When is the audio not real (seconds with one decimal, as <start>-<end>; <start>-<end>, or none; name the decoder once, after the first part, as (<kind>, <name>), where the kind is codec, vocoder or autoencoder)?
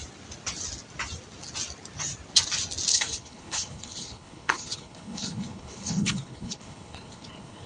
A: 2.9-7.7 (codec, HILCodec)